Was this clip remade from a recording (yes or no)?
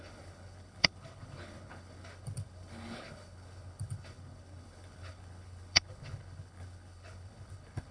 yes